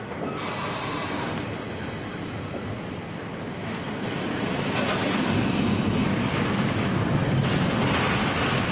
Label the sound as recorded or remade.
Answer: recorded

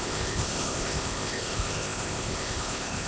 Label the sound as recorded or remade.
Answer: remade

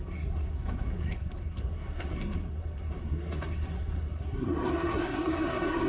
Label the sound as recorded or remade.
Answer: remade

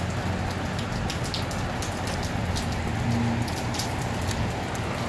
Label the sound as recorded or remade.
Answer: recorded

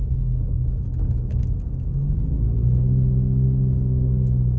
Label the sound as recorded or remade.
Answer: remade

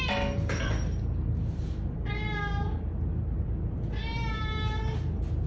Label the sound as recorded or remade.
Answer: recorded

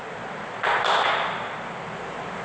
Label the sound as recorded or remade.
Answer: recorded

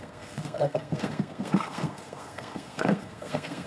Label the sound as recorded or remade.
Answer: remade